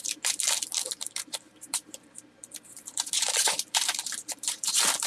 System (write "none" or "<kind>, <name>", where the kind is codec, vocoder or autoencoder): vocoder, BigVGAN v2